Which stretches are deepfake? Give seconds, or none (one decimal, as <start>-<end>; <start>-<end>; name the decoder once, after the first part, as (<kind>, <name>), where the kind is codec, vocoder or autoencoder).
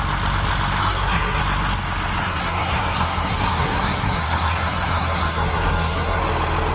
0.8-1.4 (codec, SNAC); 2.2-6.2